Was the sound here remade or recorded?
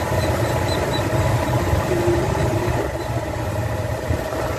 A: remade